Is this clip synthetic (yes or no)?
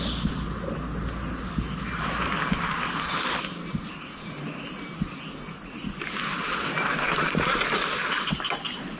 no